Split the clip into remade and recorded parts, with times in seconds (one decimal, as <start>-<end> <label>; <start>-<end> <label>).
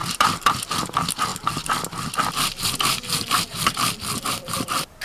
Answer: 0.0-0.5 remade; 0.5-5.0 recorded